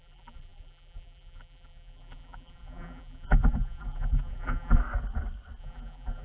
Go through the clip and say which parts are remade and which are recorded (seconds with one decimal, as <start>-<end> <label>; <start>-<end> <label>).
0.0-4.8 remade; 4.8-5.6 recorded; 5.6-6.2 remade